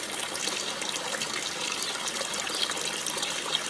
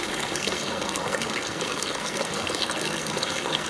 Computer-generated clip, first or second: second